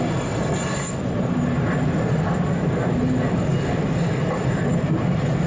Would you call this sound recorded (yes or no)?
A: yes